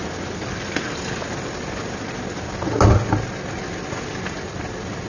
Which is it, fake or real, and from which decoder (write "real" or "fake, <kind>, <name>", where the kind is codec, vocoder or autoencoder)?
real